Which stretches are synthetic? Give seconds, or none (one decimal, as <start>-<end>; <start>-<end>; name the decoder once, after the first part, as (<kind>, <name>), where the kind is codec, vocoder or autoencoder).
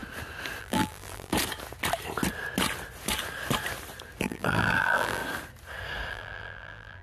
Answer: 0.6-1.3 (vocoder, BigVGAN v2); 4.2-5.2; 6.1-7.0